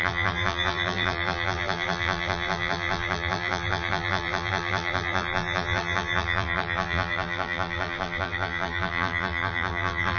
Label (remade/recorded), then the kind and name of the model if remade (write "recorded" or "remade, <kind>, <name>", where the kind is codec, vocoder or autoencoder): remade, vocoder, BigVGAN v2